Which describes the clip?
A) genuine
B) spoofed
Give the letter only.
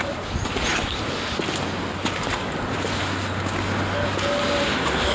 A